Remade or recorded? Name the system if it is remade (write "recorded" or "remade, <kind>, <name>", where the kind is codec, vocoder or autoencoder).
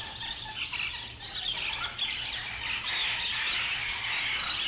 recorded